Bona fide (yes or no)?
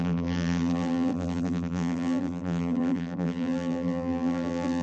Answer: no